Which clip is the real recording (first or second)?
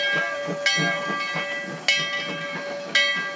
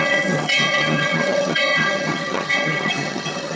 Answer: first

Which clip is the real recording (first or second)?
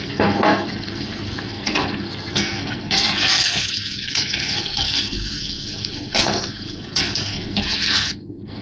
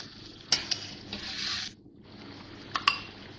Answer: second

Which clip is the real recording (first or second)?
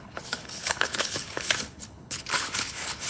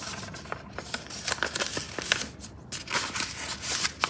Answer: second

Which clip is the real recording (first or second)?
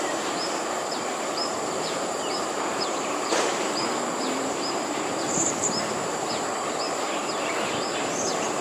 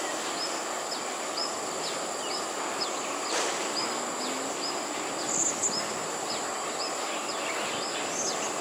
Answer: second